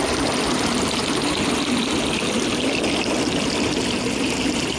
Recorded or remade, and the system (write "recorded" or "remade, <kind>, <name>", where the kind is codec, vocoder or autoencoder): recorded